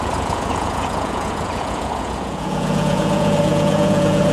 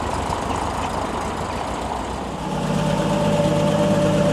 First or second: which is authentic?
second